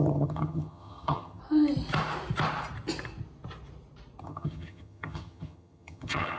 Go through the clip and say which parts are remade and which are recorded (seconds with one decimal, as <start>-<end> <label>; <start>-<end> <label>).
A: 0.0-1.4 remade; 1.4-4.2 recorded; 4.2-6.4 remade